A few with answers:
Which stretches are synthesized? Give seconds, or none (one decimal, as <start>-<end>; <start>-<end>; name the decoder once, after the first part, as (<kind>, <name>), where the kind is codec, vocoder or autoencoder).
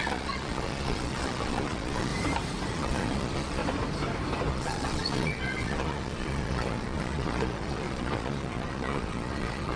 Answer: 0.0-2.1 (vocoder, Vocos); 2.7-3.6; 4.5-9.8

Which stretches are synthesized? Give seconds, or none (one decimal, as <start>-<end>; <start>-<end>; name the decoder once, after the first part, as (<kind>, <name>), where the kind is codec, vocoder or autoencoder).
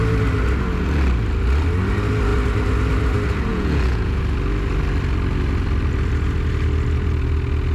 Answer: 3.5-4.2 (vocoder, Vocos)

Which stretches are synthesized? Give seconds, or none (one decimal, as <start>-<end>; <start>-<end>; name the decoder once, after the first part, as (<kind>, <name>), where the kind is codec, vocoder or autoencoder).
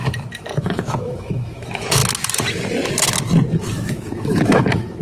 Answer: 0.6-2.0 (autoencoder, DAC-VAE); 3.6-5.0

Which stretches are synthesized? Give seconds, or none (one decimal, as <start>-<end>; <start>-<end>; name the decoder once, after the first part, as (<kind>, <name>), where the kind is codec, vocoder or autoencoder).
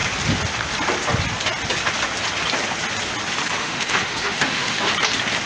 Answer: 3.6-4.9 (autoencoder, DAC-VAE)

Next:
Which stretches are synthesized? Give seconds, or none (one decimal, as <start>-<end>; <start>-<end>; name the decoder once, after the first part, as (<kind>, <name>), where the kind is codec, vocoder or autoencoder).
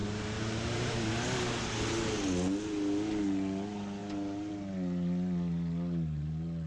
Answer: 0.0-1.1 (vocoder, BigVGAN v2)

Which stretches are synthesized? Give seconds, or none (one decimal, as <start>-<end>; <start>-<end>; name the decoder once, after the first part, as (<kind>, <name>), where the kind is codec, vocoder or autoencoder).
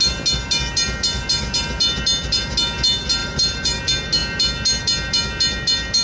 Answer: 3.2-3.8 (vocoder, BigVGAN v2)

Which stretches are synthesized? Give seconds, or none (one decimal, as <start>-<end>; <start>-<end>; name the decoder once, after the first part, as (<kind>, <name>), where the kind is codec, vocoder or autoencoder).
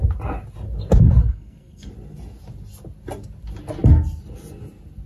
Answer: 1.2-1.9 (codec, SNAC)